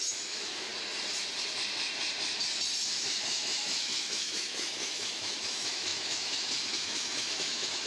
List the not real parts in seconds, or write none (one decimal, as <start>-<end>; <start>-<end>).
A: 0.0-0.7; 2.9-7.9